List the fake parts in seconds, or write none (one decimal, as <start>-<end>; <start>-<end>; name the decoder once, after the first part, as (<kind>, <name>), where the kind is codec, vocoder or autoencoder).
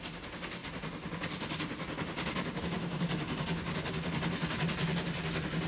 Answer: none